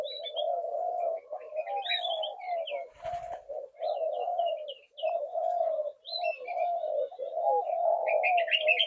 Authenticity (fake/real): real